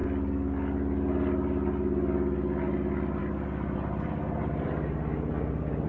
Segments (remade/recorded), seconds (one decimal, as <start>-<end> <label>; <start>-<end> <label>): 0.0-3.2 recorded; 3.2-5.9 remade